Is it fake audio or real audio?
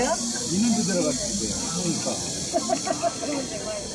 real